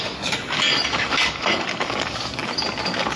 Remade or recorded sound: remade